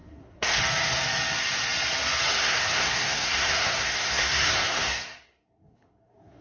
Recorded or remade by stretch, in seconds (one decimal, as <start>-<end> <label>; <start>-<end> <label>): 0.0-0.6 remade; 0.6-2.3 recorded; 2.3-6.4 remade